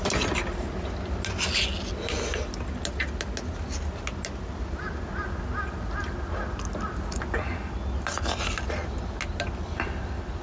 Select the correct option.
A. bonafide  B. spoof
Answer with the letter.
A